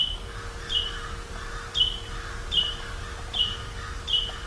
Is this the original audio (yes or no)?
yes